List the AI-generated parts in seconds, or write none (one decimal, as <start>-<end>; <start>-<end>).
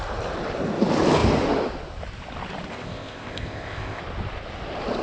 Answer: 2.7-4.0